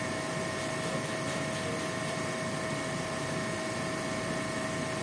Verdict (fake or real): real